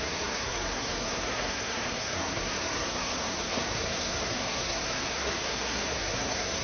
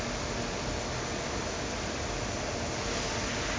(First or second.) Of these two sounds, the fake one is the first